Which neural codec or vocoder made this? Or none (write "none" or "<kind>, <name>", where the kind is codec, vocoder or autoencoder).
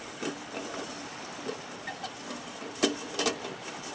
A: none